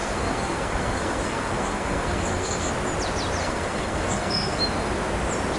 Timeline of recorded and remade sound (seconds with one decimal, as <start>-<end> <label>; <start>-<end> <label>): 0.0-2.7 remade; 2.7-3.4 recorded; 3.4-4.6 remade; 4.6-5.6 recorded